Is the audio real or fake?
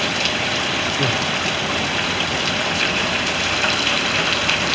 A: fake